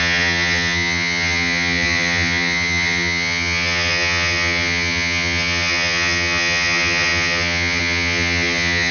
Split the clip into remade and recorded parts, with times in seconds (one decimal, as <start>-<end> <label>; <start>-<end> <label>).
0.0-8.9 remade